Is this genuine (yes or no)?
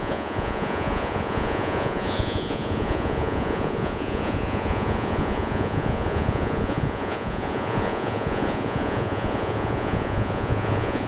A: no